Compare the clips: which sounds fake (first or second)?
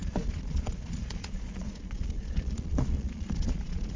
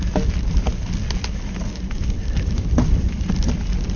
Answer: first